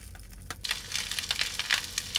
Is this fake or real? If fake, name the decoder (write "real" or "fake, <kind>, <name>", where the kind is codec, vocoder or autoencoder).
real